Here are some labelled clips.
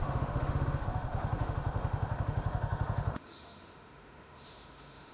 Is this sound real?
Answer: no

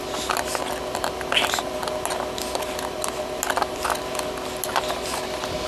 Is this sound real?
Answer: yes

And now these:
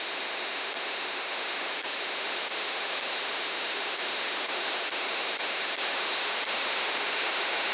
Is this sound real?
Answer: no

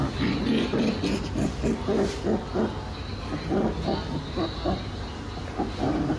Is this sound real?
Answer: yes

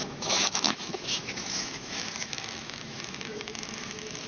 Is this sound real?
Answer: no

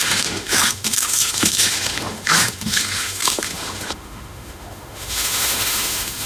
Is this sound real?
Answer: no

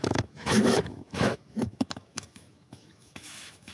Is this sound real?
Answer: no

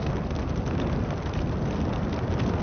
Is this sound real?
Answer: yes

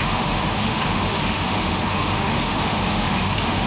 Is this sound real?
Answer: no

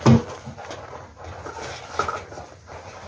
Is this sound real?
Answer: yes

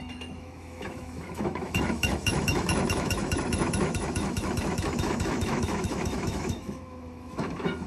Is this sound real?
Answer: no